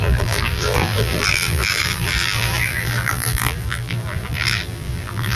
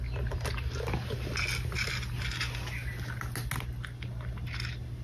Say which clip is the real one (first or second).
second